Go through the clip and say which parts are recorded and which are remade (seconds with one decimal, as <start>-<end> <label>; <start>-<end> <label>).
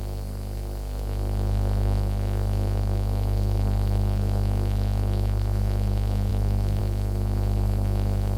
0.0-8.4 remade